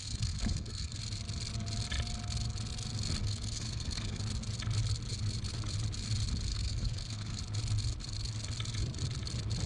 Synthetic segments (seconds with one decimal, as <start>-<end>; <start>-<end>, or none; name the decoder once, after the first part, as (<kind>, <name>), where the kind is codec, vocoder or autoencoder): 0.0-1.0 (codec, SNAC); 3.2-4.2; 6.5-7.4